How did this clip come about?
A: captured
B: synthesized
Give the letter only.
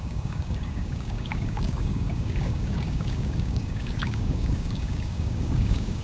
B